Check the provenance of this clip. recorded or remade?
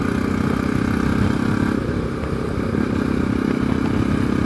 recorded